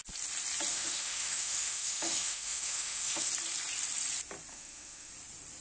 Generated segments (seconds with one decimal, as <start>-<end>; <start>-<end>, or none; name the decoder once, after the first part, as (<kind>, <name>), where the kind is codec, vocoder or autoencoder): 0.7-3.3 (autoencoder, DAC-VAE); 4.5-5.1